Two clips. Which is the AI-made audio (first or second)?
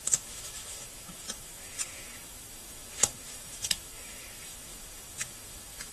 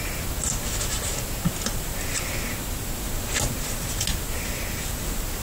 first